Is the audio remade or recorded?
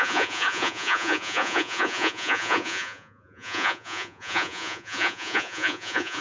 remade